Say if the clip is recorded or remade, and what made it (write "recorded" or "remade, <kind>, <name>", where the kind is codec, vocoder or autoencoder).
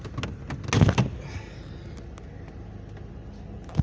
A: recorded